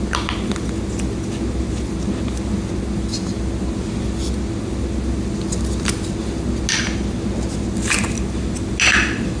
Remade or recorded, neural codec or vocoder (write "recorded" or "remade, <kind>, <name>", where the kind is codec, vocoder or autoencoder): recorded